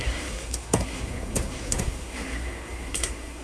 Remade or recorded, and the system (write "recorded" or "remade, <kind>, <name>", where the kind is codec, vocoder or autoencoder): remade, codec, SNAC